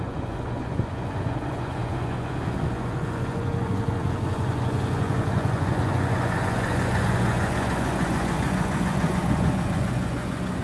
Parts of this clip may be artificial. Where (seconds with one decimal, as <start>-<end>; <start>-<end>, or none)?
0.0-10.6